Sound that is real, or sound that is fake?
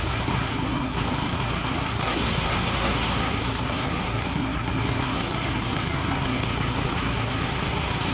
fake